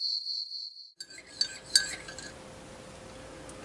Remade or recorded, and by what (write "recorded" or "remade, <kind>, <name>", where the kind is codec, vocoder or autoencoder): recorded